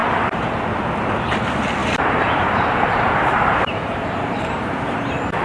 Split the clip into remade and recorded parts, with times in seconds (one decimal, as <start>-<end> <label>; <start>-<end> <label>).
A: 0.0-0.6 remade; 0.6-1.8 recorded; 1.8-5.0 remade; 5.0-5.4 recorded